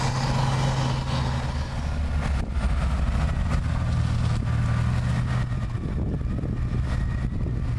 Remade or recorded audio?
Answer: recorded